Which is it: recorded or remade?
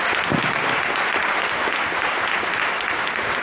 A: recorded